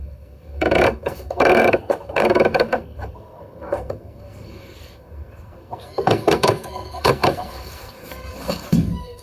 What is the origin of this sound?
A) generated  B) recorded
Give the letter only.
A